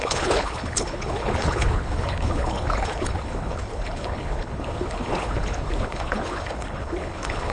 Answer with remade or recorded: remade